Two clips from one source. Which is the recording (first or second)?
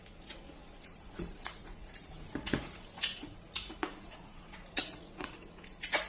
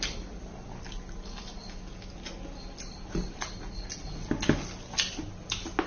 second